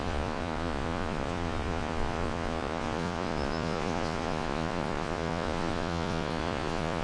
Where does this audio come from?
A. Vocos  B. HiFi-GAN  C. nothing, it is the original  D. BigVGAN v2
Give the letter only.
A